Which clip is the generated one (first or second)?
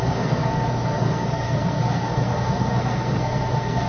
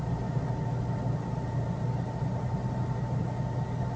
first